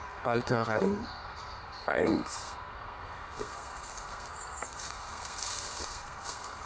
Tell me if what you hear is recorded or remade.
remade